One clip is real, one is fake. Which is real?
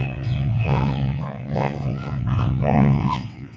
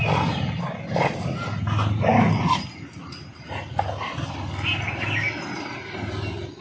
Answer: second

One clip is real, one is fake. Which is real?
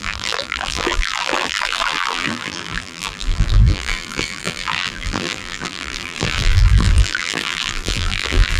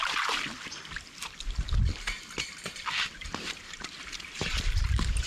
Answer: second